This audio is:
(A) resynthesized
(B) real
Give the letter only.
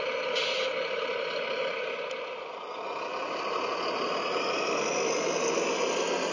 B